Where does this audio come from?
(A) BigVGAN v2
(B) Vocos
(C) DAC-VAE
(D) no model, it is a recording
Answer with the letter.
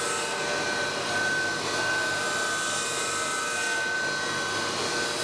D